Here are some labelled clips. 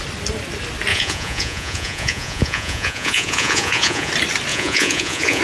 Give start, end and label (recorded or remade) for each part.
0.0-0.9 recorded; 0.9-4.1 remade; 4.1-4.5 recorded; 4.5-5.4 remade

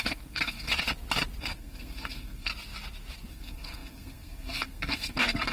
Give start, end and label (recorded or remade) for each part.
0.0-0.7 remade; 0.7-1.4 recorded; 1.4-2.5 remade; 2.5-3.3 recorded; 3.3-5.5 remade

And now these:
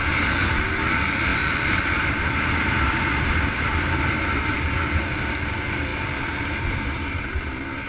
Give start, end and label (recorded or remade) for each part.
0.0-1.3 recorded; 1.3-4.0 remade; 4.0-7.9 recorded

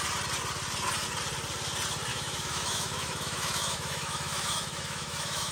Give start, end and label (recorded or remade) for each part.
0.0-2.1 recorded; 2.1-5.5 remade

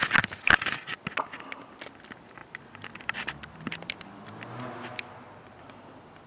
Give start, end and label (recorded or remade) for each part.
0.0-2.4 recorded; 2.4-5.6 remade; 5.6-6.3 recorded